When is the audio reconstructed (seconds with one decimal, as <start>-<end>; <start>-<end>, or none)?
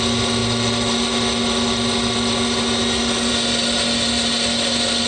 none